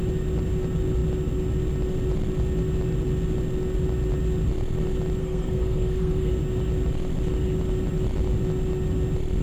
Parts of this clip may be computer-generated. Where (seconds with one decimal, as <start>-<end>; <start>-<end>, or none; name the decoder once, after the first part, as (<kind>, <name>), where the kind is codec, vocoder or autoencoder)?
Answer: 5.2-6.3 (codec, SNAC)